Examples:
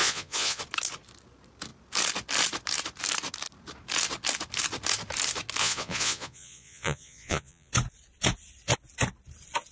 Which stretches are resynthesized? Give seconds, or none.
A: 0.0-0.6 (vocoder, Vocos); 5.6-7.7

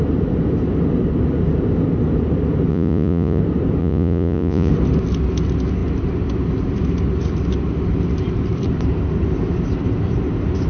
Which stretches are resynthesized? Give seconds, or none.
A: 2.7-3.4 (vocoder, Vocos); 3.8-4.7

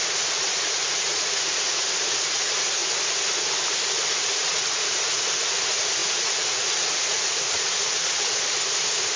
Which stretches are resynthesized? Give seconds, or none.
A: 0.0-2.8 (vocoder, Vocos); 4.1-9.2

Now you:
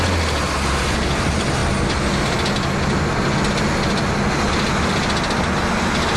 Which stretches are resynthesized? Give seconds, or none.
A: none

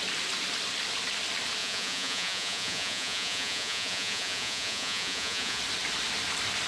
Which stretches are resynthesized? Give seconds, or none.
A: 1.6-5.6 (vocoder, Vocos)

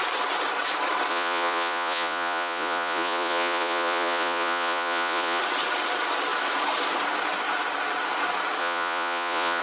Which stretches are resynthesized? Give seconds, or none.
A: 1.1-5.4 (vocoder, Vocos); 8.6-9.6

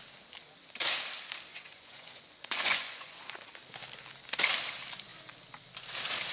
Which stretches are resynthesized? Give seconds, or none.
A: 1.5-3.2 (vocoder, Vocos)